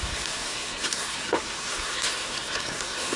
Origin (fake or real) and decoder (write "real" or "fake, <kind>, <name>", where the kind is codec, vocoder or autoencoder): fake, codec, SNAC